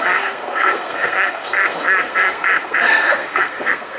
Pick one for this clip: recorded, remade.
remade